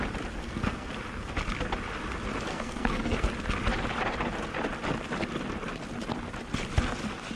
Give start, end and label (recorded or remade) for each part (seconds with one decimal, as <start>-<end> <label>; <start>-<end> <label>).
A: 0.0-0.4 recorded; 0.4-0.9 remade; 0.9-2.5 recorded; 2.5-3.3 remade; 3.3-7.4 recorded